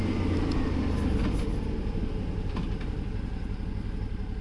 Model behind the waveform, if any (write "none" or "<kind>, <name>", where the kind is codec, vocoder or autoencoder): none